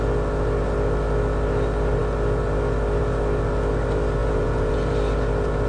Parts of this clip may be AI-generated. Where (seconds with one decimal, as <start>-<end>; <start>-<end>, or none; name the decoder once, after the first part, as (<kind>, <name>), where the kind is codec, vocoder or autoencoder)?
4.2-4.9 (vocoder, Vocos)